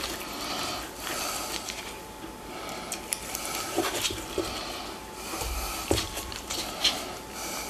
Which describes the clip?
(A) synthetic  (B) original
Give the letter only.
B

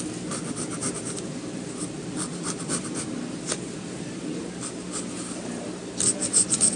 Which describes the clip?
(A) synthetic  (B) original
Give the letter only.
B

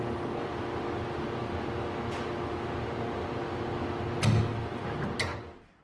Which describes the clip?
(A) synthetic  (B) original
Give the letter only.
B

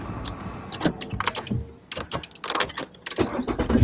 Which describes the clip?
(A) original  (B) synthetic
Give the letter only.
A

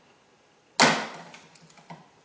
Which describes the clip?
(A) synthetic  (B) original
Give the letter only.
B